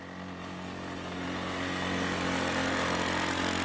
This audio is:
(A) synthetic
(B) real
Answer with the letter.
B